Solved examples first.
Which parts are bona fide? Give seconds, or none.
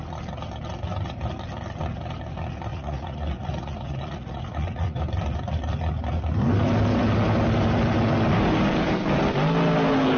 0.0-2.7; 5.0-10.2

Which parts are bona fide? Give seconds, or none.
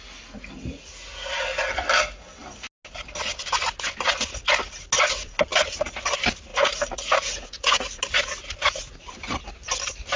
0.0-6.5; 8.0-10.2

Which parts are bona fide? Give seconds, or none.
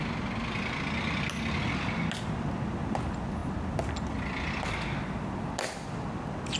0.0-6.6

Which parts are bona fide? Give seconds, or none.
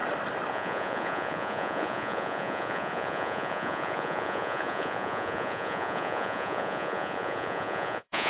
0.0-0.5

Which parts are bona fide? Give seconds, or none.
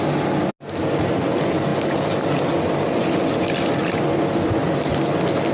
0.0-5.5